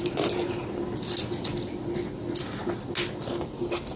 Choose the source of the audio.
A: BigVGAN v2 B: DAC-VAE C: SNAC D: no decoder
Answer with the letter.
D